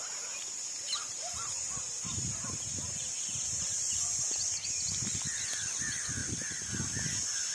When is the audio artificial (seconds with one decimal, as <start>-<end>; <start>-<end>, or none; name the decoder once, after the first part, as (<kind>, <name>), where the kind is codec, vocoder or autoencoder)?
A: 1.0-4.2 (vocoder, BigVGAN v2); 6.2-6.7